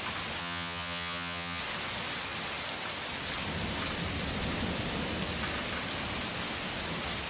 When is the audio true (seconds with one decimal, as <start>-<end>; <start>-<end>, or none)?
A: 0.0-0.4; 1.6-7.3